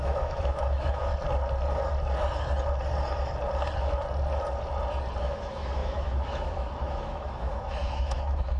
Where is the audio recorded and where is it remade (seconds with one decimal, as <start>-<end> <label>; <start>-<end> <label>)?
0.0-1.1 remade; 1.1-5.2 recorded; 5.2-8.6 remade